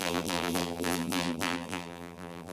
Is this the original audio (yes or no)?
no